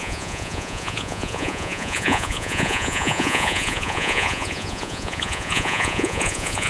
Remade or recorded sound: remade